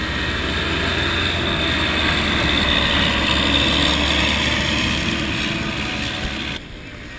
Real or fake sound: real